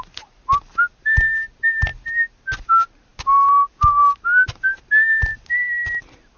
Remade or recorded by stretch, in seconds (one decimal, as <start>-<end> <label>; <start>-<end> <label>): 0.0-6.4 recorded